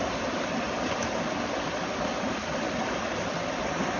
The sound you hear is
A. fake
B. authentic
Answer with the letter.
B